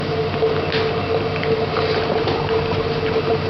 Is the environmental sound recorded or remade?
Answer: recorded